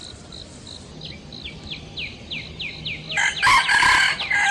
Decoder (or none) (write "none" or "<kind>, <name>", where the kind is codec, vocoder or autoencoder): none